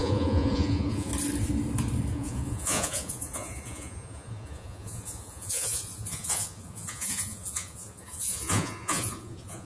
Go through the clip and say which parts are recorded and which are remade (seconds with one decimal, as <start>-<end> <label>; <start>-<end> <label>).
0.0-1.1 remade; 1.1-2.1 recorded; 2.1-9.6 remade